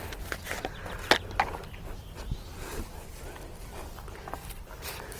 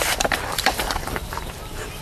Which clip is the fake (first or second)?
second